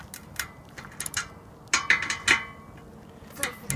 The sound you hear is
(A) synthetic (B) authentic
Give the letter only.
B